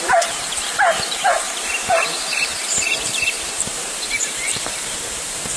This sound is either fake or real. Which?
fake